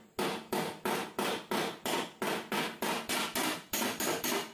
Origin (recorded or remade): recorded